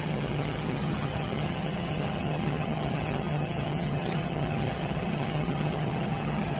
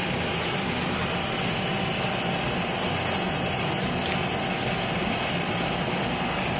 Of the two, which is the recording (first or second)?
second